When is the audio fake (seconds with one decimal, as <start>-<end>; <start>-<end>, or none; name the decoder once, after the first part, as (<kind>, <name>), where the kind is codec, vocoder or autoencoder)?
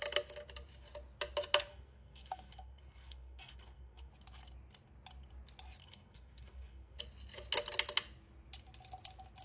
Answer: 1.7-4.1 (codec, SNAC); 5.8-7.0